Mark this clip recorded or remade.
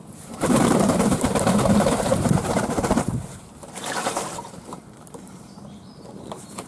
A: remade